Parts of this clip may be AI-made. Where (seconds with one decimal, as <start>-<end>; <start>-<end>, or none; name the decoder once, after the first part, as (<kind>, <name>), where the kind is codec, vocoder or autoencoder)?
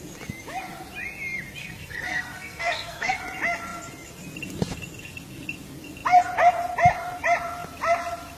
1.6-3.2 (codec, SNAC)